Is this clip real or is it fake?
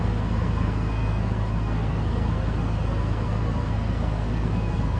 fake